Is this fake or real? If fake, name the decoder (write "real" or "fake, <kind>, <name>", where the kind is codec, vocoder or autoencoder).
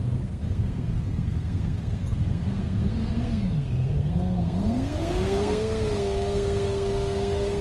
fake, codec, SNAC